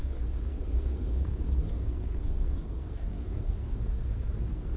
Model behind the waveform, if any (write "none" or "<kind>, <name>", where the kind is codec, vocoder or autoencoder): codec, SNAC